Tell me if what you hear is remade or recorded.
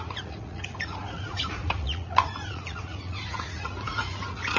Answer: remade